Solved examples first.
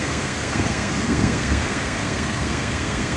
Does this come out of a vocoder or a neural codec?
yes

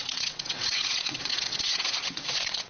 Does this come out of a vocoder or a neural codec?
yes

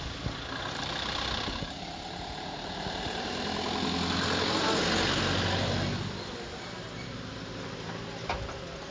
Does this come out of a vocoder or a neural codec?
no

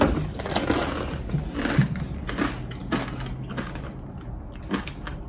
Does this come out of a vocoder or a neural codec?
no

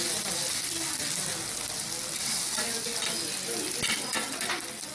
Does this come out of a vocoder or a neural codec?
no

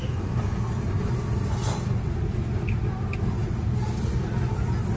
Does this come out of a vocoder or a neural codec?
no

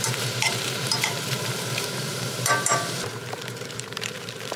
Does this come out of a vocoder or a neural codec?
yes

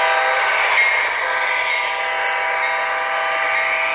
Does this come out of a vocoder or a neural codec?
no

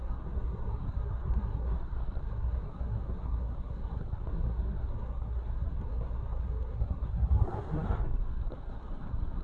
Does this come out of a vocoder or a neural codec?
yes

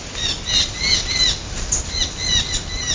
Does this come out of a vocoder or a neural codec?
no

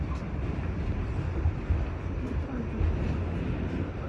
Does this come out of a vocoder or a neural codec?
no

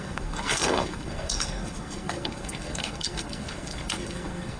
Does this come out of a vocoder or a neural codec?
yes